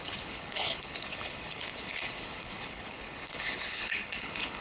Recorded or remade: remade